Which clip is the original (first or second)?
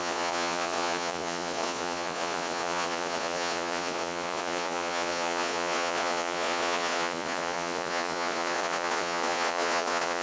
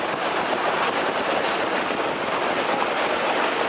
second